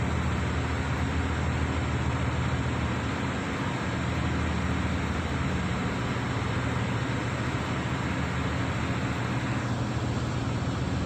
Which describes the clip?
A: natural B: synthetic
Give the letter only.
A